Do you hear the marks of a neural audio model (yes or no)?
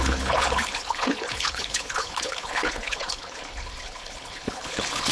yes